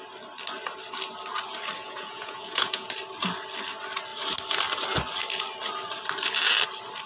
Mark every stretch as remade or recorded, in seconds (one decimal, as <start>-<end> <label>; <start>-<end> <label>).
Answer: 0.0-1.8 recorded; 1.8-2.9 remade; 2.9-7.1 recorded